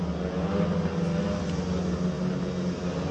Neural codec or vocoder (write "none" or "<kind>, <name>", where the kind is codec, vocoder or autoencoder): none